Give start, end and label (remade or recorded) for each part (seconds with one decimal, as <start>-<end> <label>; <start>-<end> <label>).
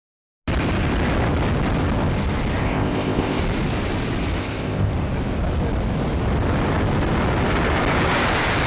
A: 0.0-2.6 recorded; 2.6-3.4 remade; 3.4-4.4 recorded; 4.4-4.9 remade; 4.9-8.7 recorded